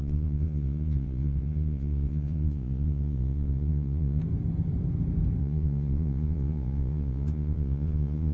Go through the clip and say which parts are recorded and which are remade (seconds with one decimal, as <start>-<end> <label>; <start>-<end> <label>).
0.0-4.2 remade; 4.2-5.4 recorded; 5.4-8.3 remade